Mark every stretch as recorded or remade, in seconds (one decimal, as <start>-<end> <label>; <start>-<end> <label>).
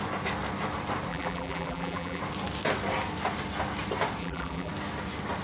0.0-1.1 recorded; 1.1-2.2 remade; 2.2-4.2 recorded; 4.2-4.7 remade; 4.7-5.4 recorded